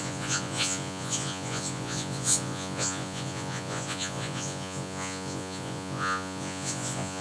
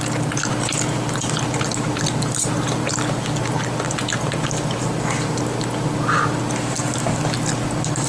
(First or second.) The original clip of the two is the second